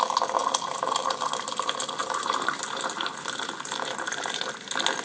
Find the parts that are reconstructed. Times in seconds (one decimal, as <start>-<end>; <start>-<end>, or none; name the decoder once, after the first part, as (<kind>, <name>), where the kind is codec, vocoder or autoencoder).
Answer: 2.0-3.4 (vocoder, BigVGAN v2)